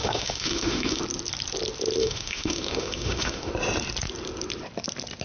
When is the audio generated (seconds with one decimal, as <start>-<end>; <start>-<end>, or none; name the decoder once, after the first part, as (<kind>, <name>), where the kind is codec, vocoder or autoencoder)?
0.0-1.0 (autoencoder, DAC-VAE); 2.0-3.5